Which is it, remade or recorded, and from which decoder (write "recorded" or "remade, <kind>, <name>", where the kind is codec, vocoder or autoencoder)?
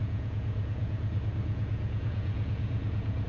remade, vocoder, Vocos